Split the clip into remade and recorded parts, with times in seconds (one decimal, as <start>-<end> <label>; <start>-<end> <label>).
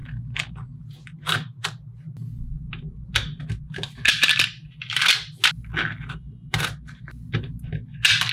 0.0-8.3 recorded